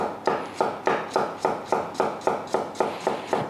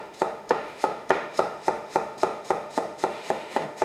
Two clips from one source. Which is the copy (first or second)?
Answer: second